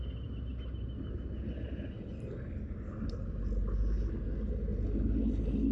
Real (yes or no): yes